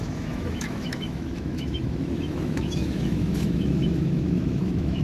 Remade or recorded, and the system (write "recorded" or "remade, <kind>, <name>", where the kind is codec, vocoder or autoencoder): remade, autoencoder, DAC-VAE